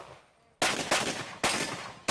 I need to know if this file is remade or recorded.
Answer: recorded